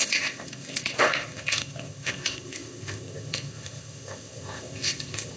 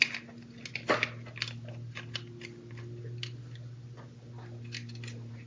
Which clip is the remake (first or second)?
first